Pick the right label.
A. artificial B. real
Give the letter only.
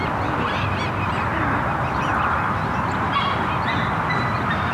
B